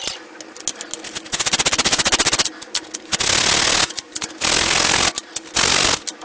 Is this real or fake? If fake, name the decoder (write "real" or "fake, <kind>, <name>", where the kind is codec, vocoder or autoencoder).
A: real